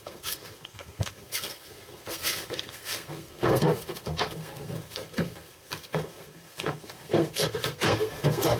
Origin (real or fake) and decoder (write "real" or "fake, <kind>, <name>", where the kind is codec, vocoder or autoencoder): fake, codec, SNAC